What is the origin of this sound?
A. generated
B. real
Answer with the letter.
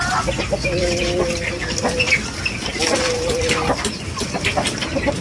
B